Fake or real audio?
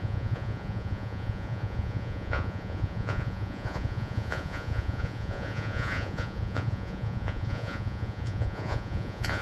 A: fake